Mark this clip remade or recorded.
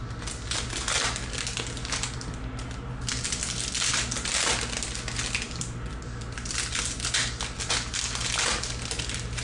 recorded